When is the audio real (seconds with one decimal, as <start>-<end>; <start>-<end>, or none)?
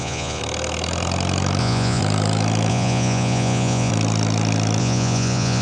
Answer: 0.4-1.6; 2.0-2.7; 3.9-4.8